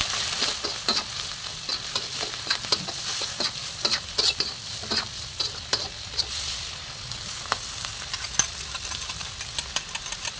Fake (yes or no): no